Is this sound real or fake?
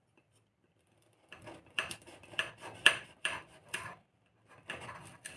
fake